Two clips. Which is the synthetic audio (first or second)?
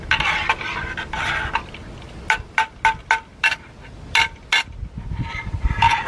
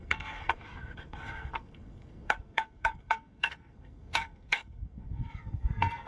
second